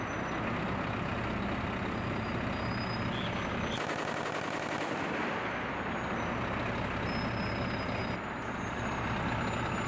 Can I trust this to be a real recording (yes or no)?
yes